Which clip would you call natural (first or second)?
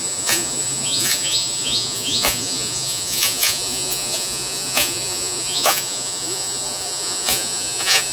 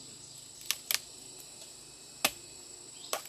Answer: second